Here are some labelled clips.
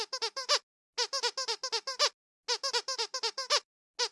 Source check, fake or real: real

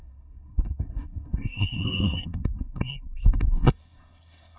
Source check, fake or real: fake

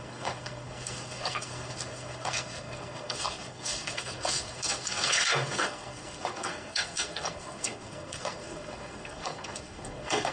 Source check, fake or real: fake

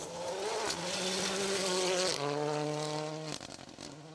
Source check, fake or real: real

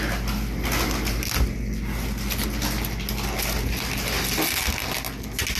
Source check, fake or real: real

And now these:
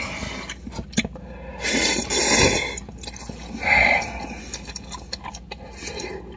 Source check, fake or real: real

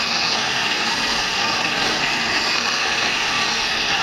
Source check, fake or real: fake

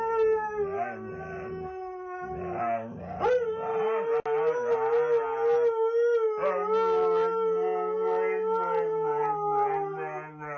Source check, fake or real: real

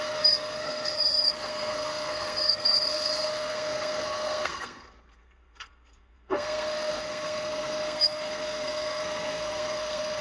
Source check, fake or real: fake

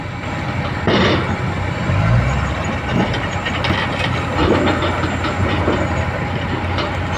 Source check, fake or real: real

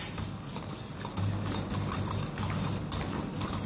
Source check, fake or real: real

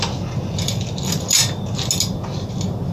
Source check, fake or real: real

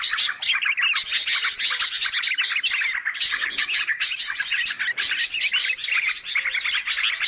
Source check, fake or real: real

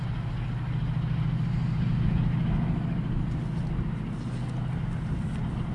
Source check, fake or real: real